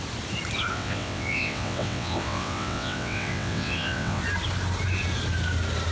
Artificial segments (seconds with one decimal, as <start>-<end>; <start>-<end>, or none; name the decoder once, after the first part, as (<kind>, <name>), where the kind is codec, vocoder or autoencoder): 0.7-4.2 (vocoder, WaveNeXt)

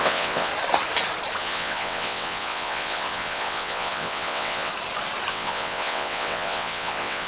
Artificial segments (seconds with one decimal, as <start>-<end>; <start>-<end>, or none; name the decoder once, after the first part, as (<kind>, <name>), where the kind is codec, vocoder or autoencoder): 0.0-0.5 (vocoder, WaveNeXt); 1.4-4.7; 5.3-7.3

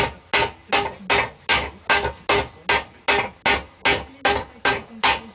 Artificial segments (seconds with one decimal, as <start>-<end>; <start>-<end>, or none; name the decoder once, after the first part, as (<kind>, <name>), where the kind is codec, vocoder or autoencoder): none

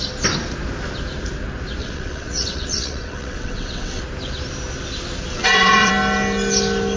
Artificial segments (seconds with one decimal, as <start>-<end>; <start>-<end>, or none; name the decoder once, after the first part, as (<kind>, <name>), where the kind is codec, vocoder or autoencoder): 1.8-4.0 (vocoder, WaveNeXt); 5.3-5.9

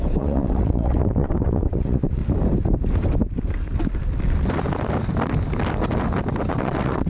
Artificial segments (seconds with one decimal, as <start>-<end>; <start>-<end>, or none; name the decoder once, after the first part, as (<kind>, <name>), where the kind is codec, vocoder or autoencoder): 0.0-2.2 (vocoder, WaveNeXt); 6.5-7.1

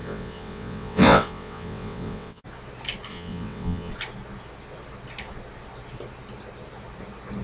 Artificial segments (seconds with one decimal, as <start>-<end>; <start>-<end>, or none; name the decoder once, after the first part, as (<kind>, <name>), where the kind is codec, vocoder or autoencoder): 0.0-2.4 (vocoder, WaveNeXt); 3.1-3.9